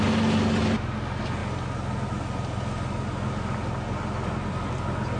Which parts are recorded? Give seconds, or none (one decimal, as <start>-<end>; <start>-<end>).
0.0-5.2